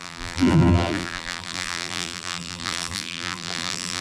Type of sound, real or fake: fake